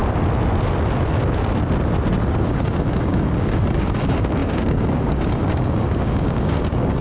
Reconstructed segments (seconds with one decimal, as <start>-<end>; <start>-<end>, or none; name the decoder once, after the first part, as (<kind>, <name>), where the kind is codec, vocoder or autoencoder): 2.4-7.0 (codec, DAC)